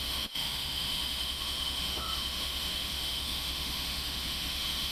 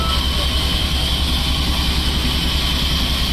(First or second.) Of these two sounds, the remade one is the first